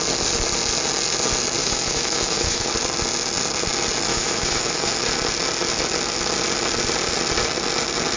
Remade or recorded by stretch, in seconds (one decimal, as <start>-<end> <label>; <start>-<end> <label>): 0.0-1.6 recorded; 1.6-2.7 remade; 2.7-4.1 recorded; 4.1-4.9 remade; 4.9-8.2 recorded